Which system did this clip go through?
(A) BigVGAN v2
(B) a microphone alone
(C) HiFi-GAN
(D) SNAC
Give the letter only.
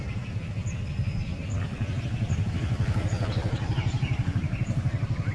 B